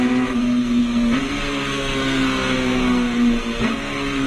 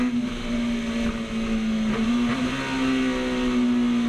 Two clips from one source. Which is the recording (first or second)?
second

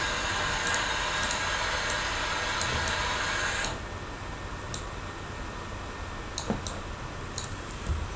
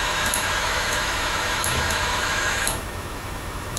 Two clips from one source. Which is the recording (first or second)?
first